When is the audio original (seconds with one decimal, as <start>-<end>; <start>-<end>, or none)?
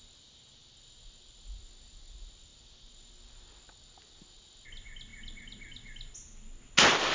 0.0-7.1